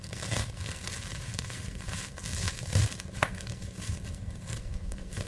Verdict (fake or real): fake